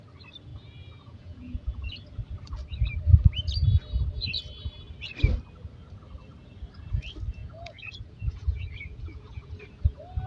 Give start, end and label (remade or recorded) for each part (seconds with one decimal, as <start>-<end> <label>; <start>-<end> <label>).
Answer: 0.0-0.5 recorded; 0.5-1.9 remade; 1.9-7.4 recorded; 7.4-9.6 remade; 9.6-10.3 recorded